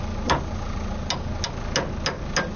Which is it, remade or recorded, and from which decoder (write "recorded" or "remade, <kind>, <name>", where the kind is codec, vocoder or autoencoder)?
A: recorded